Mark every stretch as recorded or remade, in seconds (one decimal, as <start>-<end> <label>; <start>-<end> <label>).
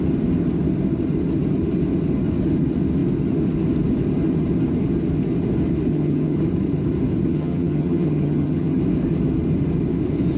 0.0-5.9 recorded; 5.9-6.4 remade; 6.4-7.3 recorded; 7.3-8.8 remade; 8.8-10.4 recorded